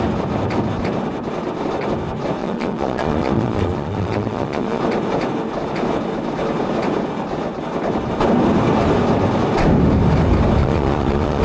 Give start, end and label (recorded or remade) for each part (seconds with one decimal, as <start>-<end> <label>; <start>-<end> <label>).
0.0-2.4 recorded; 2.4-4.8 remade; 4.8-10.6 recorded; 10.6-11.4 remade

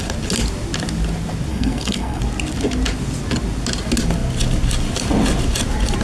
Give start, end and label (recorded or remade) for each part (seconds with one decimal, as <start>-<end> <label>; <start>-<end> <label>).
0.0-1.5 recorded; 1.5-2.2 remade; 2.2-6.0 recorded

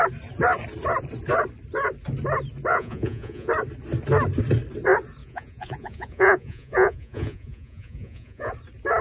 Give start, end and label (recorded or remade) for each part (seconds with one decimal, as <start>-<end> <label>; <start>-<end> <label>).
0.0-2.7 recorded; 2.7-3.5 remade; 3.5-5.2 recorded; 5.2-8.5 remade; 8.5-9.0 recorded